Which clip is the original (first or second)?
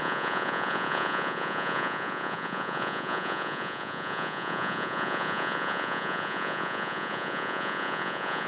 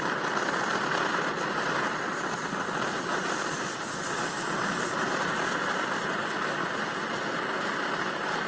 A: second